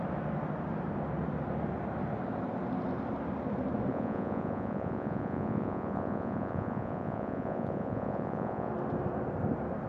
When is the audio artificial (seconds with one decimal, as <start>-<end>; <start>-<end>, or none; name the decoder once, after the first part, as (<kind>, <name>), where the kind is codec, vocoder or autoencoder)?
3.9-8.7 (vocoder, Vocos)

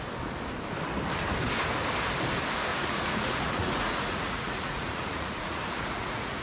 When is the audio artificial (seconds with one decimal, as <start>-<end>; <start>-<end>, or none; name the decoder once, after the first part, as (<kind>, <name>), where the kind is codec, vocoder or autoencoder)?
2.7-6.4 (vocoder, Vocos)

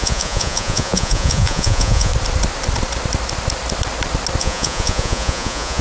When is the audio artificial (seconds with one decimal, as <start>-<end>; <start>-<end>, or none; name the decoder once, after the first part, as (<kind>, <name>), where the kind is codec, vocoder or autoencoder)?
0.0-2.1 (vocoder, Vocos); 4.4-5.8

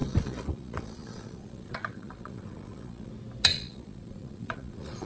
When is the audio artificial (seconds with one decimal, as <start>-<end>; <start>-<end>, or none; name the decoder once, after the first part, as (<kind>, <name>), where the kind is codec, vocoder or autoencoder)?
0.0-3.1 (vocoder, Vocos); 3.5-5.1

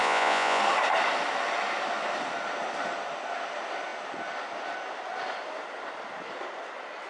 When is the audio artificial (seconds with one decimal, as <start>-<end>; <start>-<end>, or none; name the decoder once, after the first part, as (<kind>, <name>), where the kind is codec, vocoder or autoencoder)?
0.0-0.6 (vocoder, Vocos)